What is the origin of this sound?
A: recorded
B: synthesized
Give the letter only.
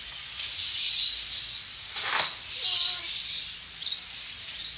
B